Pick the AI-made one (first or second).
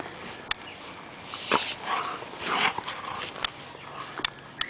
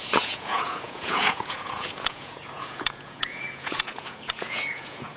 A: second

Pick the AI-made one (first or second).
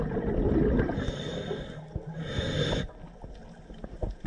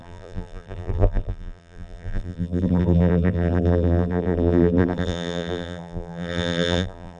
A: second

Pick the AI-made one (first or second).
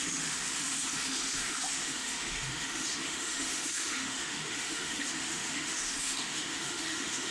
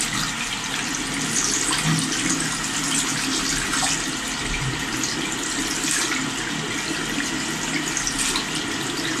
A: first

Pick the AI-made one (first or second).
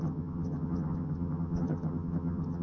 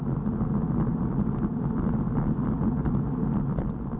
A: first